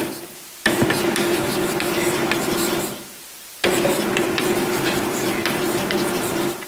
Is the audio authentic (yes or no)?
yes